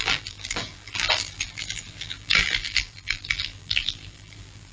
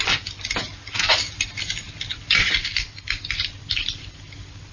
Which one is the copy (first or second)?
first